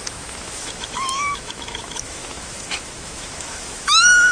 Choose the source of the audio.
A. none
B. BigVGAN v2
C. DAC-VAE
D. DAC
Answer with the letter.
C